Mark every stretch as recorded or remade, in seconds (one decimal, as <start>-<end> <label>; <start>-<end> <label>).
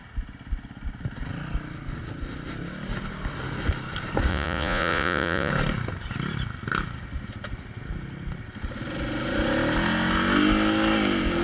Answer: 0.0-4.3 recorded; 4.3-5.5 remade; 5.5-11.4 recorded